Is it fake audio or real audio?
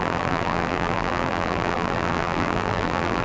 fake